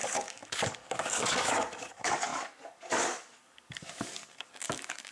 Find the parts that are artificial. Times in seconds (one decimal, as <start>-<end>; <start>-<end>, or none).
0.0-5.1